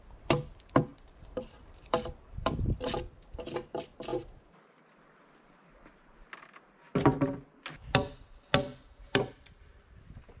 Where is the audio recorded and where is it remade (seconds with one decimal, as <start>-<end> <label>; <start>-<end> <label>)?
0.0-0.9 recorded; 0.9-2.6 remade; 2.6-4.1 recorded; 4.1-4.9 remade; 4.9-8.7 recorded; 8.7-9.4 remade; 9.4-10.4 recorded